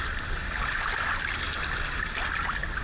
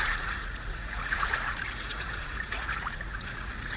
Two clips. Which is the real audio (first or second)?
first